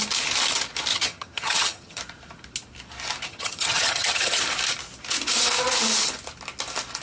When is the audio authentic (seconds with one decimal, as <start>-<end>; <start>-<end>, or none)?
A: 0.0-0.9; 2.0-3.3; 4.4-7.0